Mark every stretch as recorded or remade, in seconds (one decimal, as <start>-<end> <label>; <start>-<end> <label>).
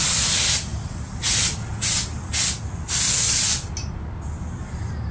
0.0-5.1 recorded